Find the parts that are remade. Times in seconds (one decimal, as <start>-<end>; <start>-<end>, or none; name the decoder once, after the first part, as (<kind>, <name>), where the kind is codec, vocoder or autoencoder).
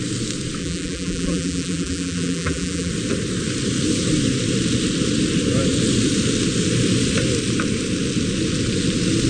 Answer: 0.6-2.9 (vocoder, BigVGAN v2)